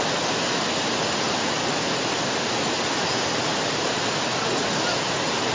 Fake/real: real